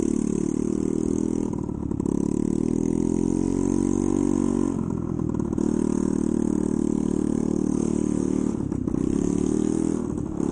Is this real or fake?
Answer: real